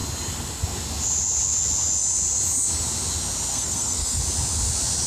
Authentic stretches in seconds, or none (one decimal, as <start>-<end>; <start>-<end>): 0.0-3.5; 4.2-5.1